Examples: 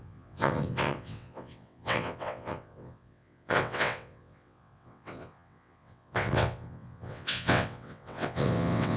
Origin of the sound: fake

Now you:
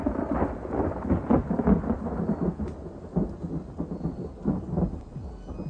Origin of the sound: real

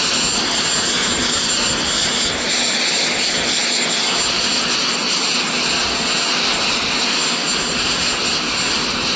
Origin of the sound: real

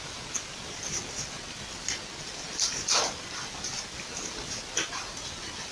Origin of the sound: real